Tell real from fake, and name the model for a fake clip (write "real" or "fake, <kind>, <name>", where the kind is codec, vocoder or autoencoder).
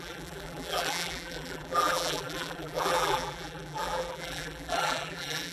fake, vocoder, BigVGAN v2